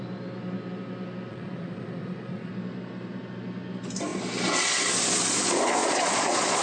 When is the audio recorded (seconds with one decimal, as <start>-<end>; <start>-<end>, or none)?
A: 0.0-1.3; 2.5-5.8